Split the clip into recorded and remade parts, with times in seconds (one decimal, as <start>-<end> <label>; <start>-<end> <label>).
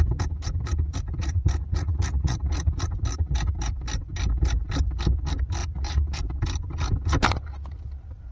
0.0-1.2 recorded; 1.2-2.7 remade; 2.7-5.6 recorded; 5.6-6.2 remade; 6.2-8.3 recorded